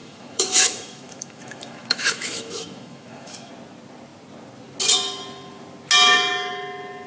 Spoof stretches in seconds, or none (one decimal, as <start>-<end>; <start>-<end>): 0.0-3.5